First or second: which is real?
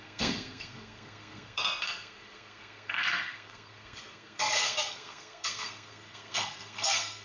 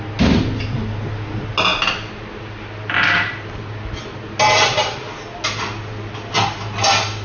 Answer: second